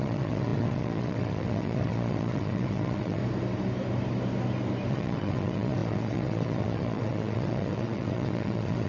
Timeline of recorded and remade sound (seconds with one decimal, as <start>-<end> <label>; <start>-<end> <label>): 0.0-3.2 remade; 3.2-4.9 recorded; 4.9-8.9 remade